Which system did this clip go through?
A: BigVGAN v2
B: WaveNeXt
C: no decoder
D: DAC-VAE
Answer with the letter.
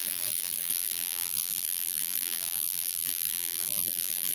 A